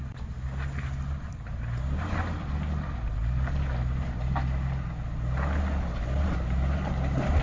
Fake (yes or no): no